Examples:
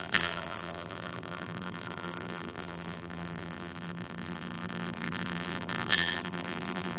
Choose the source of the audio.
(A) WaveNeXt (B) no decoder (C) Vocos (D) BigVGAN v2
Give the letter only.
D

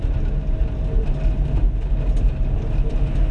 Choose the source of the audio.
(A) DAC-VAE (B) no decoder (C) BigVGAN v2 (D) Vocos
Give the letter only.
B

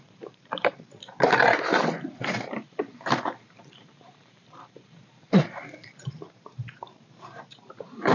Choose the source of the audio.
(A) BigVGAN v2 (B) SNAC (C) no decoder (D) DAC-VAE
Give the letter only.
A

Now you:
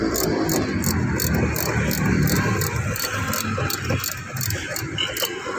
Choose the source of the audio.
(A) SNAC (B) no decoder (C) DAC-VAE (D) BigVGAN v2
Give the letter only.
B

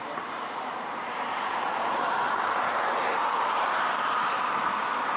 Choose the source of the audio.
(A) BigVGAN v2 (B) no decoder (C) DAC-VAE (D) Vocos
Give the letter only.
A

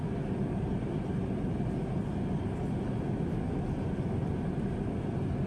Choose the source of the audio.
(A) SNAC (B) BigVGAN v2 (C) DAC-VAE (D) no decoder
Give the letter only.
D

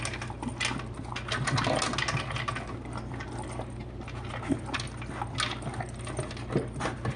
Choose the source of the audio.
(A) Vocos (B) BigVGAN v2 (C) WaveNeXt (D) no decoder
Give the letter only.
D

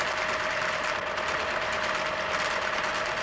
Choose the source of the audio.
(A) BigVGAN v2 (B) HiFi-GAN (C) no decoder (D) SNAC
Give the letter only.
C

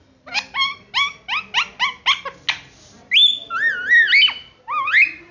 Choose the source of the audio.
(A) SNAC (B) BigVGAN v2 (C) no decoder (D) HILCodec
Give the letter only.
C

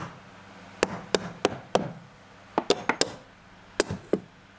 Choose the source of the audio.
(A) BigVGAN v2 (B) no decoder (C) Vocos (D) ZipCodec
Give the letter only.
B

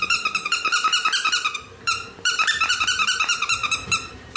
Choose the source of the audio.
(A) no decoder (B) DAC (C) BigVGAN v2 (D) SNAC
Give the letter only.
C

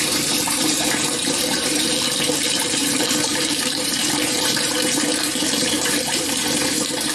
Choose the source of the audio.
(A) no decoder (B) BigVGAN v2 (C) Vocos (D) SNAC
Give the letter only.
B